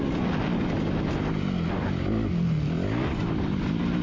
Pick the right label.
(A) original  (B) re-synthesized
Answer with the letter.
A